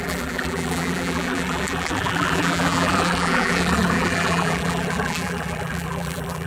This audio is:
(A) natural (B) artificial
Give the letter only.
B